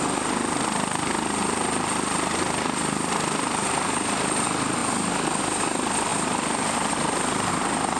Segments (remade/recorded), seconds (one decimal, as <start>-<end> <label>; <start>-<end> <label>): 0.0-8.0 recorded